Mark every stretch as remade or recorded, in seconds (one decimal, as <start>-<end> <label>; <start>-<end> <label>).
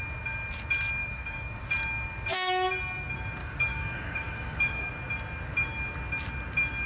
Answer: 0.0-1.0 recorded; 1.0-1.6 remade; 1.6-3.4 recorded; 3.4-4.9 remade; 4.9-6.9 recorded